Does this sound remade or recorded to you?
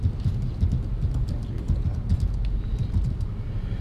recorded